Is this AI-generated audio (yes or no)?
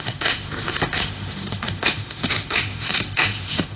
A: yes